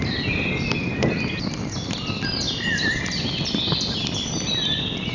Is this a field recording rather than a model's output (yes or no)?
yes